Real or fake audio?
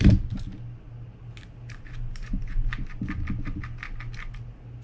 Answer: real